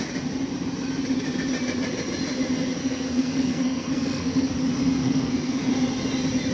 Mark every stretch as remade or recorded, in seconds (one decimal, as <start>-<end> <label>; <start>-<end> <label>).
0.0-2.8 recorded; 2.8-4.5 remade; 4.5-5.0 recorded; 5.0-5.7 remade; 5.7-6.5 recorded